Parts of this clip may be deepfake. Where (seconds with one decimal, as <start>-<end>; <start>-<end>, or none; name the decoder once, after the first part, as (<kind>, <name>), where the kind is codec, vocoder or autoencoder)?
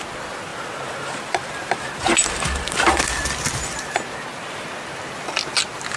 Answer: 0.5-4.1 (vocoder, BigVGAN v2)